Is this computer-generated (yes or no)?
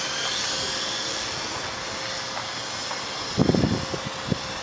no